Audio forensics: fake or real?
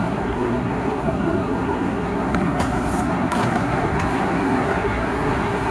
fake